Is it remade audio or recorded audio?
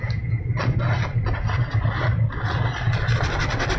recorded